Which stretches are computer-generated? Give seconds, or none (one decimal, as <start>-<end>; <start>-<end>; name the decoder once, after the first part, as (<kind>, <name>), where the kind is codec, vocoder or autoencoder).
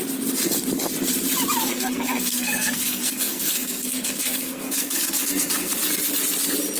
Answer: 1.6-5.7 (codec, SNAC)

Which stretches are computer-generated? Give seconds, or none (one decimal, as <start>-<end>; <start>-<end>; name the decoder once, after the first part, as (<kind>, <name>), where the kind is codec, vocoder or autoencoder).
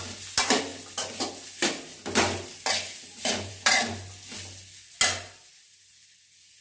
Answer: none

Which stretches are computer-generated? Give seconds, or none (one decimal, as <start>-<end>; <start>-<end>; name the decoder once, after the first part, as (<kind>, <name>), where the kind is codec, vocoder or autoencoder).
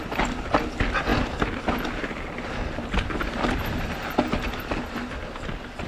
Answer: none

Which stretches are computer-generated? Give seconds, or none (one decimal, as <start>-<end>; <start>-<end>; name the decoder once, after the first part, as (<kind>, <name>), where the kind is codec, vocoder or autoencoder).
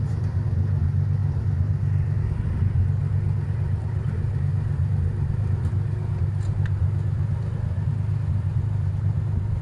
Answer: 8.5-9.1 (vocoder, BigVGAN v2)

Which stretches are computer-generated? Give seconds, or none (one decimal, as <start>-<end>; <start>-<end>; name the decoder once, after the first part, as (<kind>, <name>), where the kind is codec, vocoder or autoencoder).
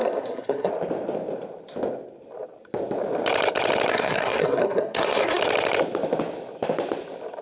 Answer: 0.0-0.7 (codec, SNAC); 3.9-5.4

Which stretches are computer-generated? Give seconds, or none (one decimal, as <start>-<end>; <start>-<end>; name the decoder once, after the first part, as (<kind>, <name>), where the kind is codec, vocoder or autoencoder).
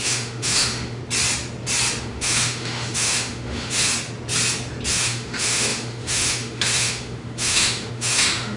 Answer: 0.0-1.0 (autoencoder, DAC-VAE); 2.0-3.9; 4.9-8.6